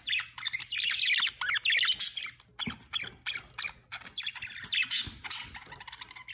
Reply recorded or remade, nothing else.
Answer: recorded